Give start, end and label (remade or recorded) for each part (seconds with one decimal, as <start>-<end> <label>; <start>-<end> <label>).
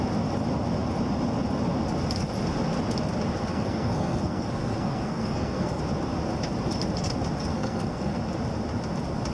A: 0.0-3.5 recorded; 3.5-5.8 remade; 5.8-7.5 recorded; 7.5-8.2 remade; 8.2-9.3 recorded